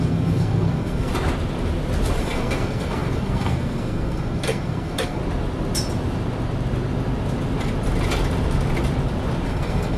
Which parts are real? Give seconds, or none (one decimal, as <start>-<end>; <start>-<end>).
1.1-2.2; 5.2-9.5